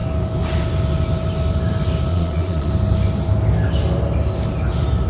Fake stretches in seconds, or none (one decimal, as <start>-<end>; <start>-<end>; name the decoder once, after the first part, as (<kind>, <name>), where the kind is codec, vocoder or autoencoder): 2.1-2.7 (vocoder, Vocos)